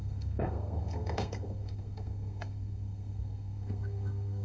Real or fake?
fake